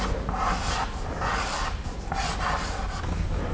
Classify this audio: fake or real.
real